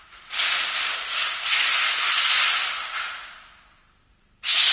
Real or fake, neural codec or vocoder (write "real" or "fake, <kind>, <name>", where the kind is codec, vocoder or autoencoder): real